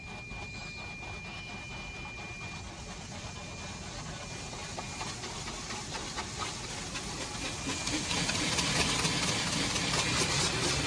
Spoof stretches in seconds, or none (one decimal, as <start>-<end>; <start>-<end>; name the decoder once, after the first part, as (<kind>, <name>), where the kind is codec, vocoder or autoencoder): none